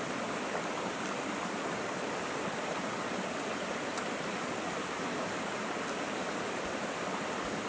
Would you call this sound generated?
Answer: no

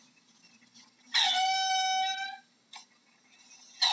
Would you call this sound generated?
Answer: no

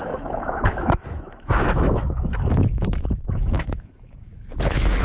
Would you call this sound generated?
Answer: yes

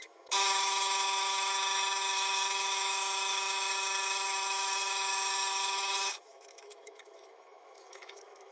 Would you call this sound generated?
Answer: yes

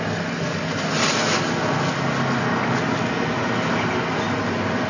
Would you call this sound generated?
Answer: no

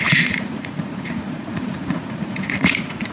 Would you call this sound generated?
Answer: yes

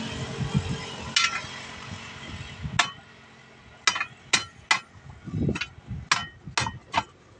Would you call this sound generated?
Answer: no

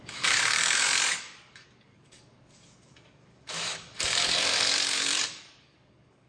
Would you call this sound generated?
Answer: yes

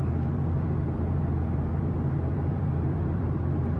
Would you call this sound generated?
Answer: yes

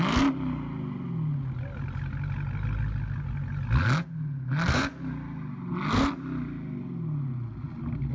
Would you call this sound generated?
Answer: no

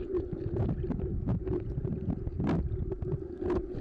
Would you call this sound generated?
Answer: no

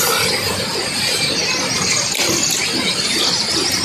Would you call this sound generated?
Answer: no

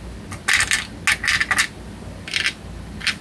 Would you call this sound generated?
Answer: no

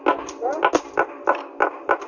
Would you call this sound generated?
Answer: no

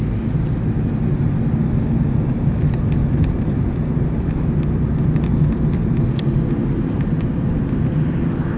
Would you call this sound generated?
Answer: no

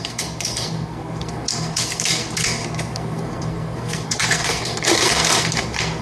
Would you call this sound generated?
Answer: yes